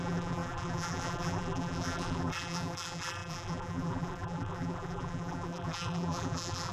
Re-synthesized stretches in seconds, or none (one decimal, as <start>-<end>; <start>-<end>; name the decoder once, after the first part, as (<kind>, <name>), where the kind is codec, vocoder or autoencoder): 0.0-6.7 (vocoder, BigVGAN v2)